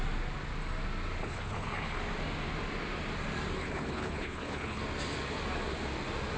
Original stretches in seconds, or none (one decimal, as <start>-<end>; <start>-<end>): 0.0-1.2; 2.0-3.6; 4.8-6.4